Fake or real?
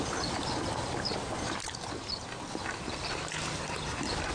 real